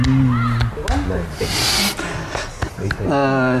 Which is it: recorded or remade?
recorded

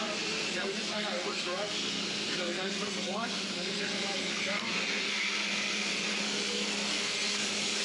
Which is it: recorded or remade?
remade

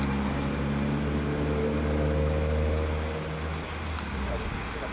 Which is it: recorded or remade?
recorded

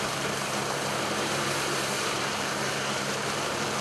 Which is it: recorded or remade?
remade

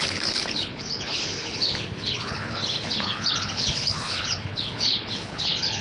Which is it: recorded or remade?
remade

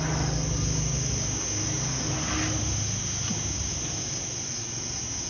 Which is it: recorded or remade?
recorded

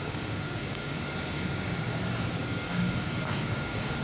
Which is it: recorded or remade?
remade